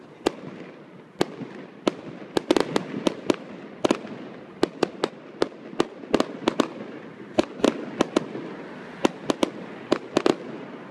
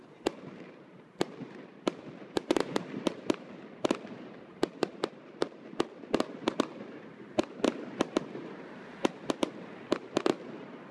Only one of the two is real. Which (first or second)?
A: first